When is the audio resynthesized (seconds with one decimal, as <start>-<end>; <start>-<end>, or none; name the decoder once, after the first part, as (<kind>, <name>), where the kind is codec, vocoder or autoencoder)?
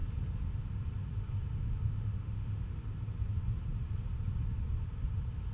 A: 1.5-2.8 (autoencoder, DAC-VAE)